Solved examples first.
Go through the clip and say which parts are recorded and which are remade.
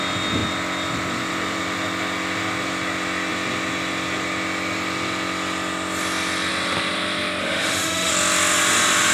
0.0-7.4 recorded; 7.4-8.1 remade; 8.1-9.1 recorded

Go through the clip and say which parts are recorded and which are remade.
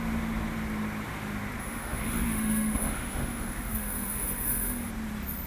0.0-1.6 recorded; 1.6-4.9 remade; 4.9-5.5 recorded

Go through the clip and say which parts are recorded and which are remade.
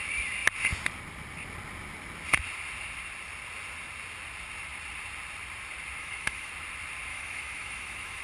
0.0-6.0 recorded; 6.0-6.5 remade; 6.5-7.1 recorded; 7.1-8.2 remade